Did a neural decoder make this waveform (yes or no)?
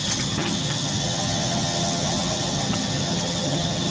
yes